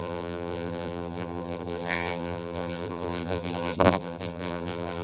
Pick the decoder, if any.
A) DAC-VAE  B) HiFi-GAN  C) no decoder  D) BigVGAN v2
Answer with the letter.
D